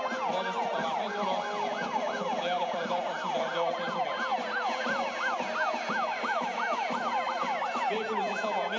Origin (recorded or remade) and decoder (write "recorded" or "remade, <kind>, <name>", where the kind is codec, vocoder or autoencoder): recorded